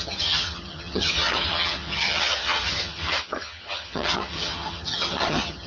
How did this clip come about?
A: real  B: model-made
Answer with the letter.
B